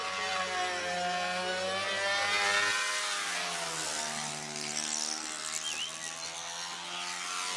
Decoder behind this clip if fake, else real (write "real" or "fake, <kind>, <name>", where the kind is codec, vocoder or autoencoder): real